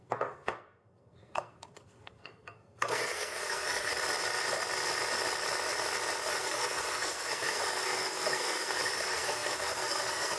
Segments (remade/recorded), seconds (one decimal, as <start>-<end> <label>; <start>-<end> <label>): 0.0-3.9 remade; 3.9-6.4 recorded; 6.4-10.4 remade